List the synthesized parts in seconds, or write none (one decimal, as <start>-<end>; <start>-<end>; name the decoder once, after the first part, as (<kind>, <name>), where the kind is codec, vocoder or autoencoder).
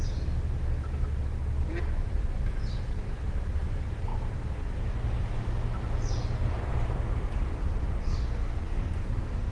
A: 8.0-9.5 (codec, SNAC)